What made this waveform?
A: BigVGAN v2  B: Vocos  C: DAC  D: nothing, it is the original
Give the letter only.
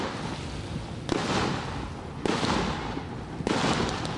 D